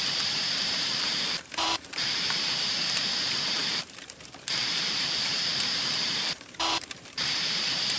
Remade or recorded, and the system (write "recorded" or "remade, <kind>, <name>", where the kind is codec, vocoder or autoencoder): remade, vocoder, BigVGAN v2